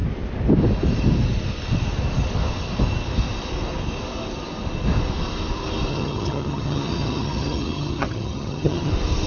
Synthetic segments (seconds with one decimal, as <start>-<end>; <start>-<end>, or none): 5.9-8.9